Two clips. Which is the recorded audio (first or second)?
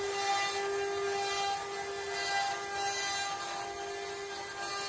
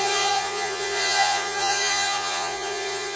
first